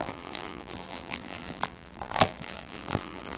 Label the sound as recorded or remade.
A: remade